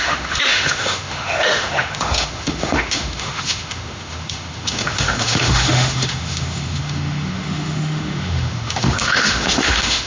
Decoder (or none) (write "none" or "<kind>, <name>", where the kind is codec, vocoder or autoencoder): autoencoder, DAC-VAE